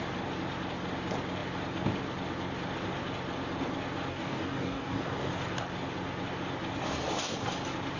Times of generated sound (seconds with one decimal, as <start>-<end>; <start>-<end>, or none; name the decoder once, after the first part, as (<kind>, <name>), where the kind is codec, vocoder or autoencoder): 4.1-5.3 (codec, DAC)